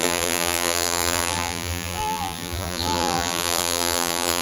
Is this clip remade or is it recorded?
remade